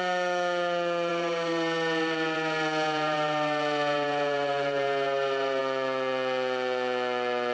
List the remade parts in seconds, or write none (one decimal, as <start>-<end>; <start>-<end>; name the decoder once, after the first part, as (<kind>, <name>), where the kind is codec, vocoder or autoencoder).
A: 1.1-5.6 (vocoder, BigVGAN v2)